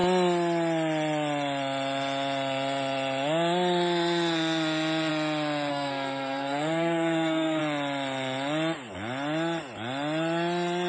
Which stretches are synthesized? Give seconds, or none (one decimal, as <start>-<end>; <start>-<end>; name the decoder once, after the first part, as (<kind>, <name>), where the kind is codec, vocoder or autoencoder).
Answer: 5.7-7.6 (codec, SNAC)